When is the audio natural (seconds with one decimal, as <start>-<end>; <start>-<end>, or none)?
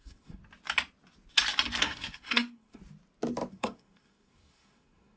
0.4-1.8; 2.8-3.5